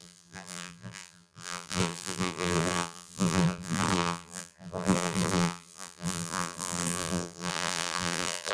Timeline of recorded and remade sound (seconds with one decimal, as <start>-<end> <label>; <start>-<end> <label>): 0.0-8.5 remade